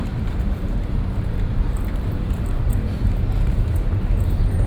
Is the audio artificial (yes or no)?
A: yes